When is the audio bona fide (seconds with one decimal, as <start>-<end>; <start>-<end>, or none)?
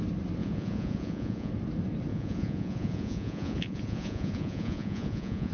0.0-0.4; 1.5-2.1